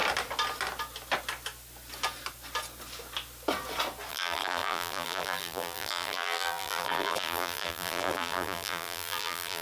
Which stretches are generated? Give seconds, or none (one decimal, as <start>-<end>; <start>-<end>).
4.1-9.6